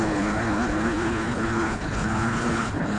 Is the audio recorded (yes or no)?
no